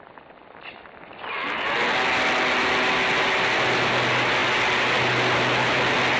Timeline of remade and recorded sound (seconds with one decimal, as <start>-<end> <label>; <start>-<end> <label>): 0.0-6.2 recorded